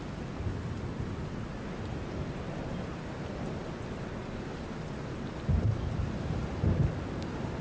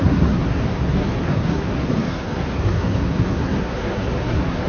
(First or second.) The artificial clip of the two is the second